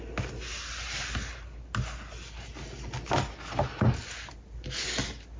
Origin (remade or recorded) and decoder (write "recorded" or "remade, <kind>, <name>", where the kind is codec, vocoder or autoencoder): recorded